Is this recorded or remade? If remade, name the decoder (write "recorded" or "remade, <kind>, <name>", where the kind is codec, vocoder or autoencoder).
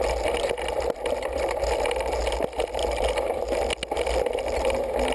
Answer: recorded